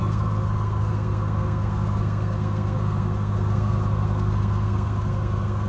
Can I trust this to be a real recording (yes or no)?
no